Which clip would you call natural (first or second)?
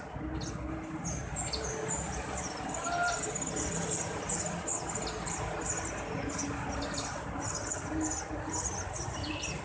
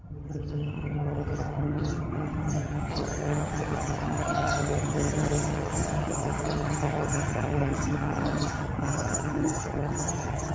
first